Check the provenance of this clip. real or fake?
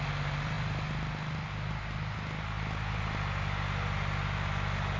real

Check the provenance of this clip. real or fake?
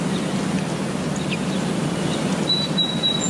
real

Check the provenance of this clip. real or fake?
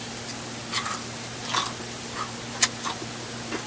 real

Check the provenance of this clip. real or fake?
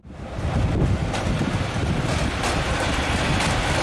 real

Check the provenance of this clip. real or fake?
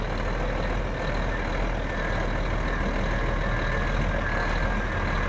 real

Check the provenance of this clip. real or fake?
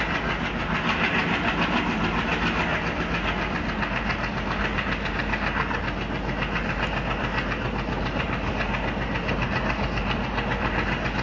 real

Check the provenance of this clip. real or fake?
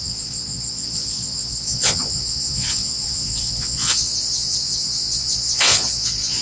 fake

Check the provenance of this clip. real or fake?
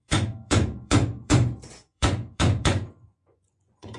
fake